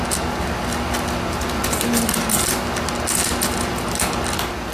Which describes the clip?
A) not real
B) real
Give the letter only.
B